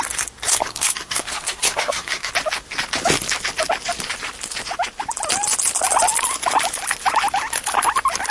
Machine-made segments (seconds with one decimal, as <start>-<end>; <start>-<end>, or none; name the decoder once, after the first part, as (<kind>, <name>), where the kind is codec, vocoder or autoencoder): 0.5-2.3 (codec, SNAC)